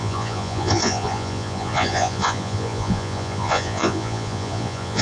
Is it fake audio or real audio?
fake